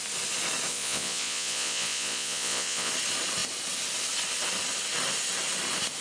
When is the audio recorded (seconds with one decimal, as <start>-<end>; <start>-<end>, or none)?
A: 0.0-0.7; 2.9-6.0

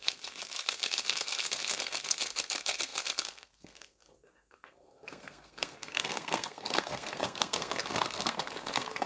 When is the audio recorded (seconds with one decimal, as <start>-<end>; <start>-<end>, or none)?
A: none